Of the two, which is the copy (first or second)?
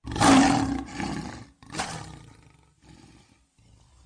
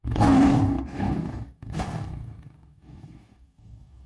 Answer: second